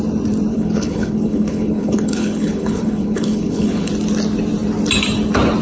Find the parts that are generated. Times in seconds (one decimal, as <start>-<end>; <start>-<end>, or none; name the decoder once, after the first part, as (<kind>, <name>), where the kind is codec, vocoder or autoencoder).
0.5-3.9 (codec, HILCodec)